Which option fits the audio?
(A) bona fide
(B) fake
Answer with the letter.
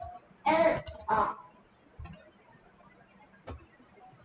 A